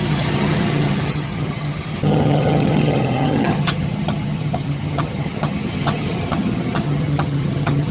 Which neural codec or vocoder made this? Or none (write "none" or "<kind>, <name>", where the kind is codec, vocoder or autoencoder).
vocoder, HiFi-GAN